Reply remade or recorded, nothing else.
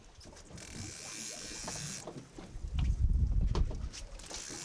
recorded